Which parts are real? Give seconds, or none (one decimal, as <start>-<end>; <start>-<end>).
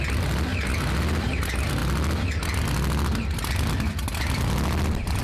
0.0-5.2